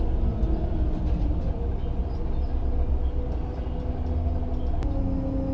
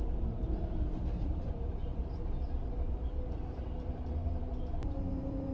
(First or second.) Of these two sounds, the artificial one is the second